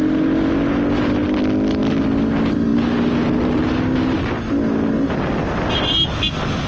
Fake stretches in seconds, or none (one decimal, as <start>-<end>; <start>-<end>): none